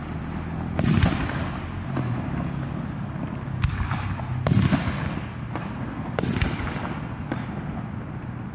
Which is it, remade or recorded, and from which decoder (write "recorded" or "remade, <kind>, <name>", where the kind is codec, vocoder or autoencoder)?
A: recorded